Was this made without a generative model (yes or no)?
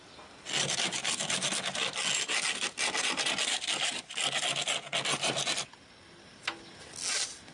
yes